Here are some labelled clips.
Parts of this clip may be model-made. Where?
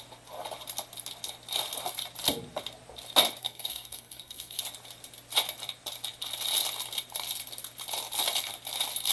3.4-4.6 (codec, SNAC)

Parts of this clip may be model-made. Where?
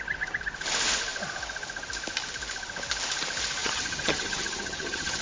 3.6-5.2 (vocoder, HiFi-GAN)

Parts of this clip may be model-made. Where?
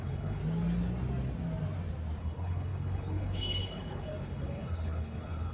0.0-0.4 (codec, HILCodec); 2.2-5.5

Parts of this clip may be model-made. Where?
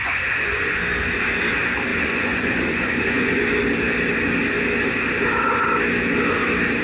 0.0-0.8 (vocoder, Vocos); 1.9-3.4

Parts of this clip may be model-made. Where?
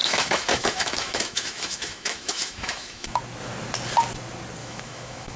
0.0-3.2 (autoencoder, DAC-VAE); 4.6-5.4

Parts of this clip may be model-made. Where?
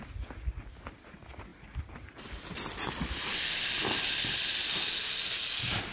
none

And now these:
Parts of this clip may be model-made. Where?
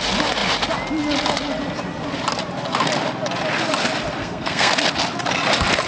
4.2-4.7 (codec, SNAC)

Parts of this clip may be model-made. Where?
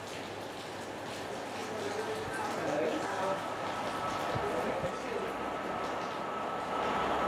none